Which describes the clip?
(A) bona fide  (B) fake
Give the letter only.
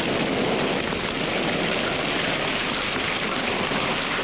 A